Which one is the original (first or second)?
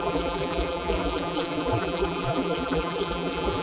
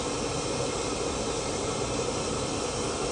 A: second